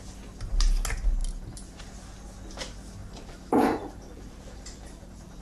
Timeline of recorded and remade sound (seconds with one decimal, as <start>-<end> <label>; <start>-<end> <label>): 0.0-1.2 recorded; 1.2-1.8 remade; 1.8-3.0 recorded; 3.0-5.4 remade